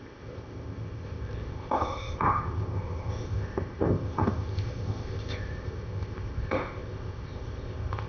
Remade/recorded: remade